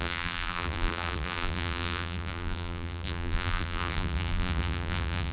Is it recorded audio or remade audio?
remade